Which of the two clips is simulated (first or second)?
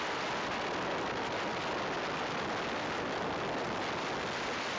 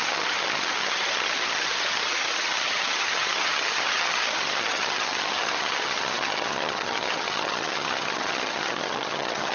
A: second